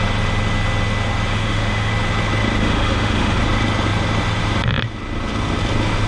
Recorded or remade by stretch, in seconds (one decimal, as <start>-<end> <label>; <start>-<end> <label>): 0.0-1.3 recorded; 1.3-1.9 remade; 1.9-2.6 recorded; 2.6-3.4 remade; 3.4-6.1 recorded